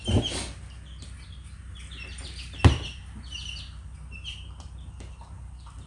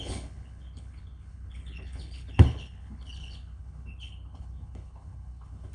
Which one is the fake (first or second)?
second